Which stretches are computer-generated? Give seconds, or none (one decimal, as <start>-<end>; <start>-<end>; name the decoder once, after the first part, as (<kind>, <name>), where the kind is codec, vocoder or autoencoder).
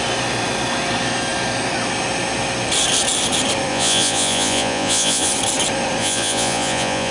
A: 3.7-5.3 (vocoder, Vocos); 6.0-7.1